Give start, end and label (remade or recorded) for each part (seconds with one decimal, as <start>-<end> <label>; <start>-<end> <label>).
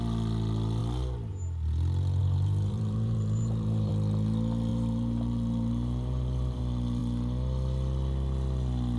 0.0-2.2 recorded; 2.2-3.9 remade; 3.9-4.7 recorded; 4.7-6.6 remade; 6.6-9.0 recorded